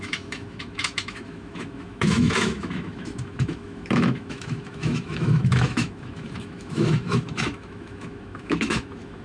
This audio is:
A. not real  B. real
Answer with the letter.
A